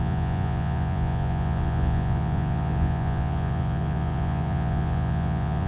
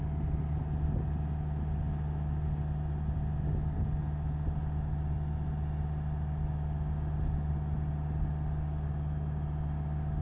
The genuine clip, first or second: second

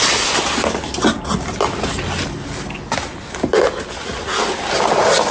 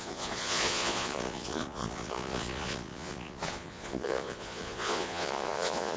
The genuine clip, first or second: first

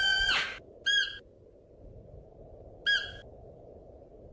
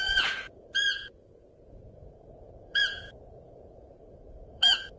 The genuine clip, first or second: first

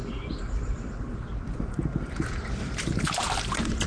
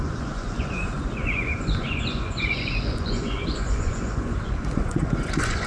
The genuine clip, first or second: first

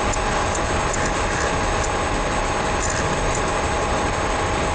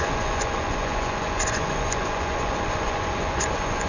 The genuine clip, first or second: first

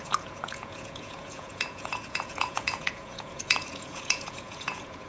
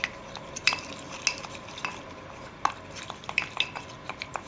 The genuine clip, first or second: second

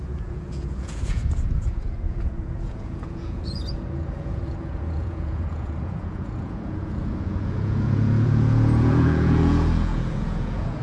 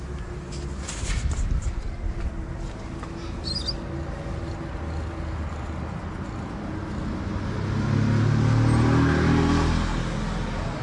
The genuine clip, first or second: second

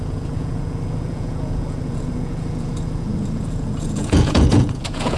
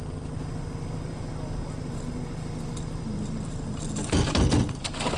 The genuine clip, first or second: second